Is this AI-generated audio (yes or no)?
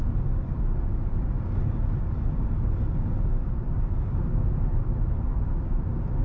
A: no